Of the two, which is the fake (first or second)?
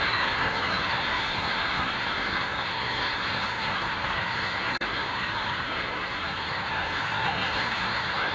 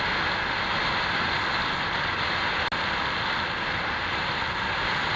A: first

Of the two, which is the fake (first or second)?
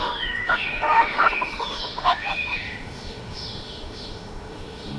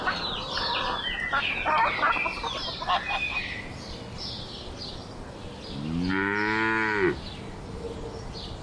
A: first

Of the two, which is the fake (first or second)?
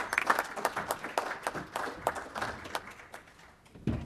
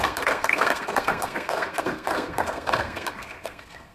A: second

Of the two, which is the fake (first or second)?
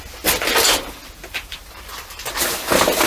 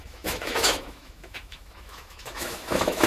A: second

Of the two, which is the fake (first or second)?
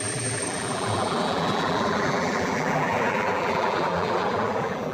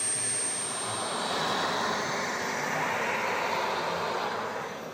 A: first